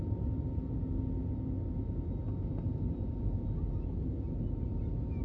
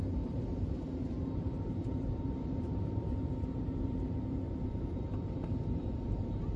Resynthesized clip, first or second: second